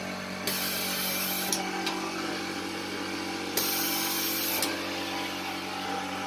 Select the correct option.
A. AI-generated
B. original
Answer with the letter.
B